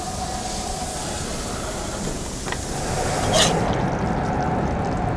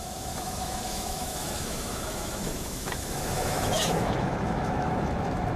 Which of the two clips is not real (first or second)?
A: second